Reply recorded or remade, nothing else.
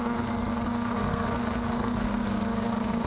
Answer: remade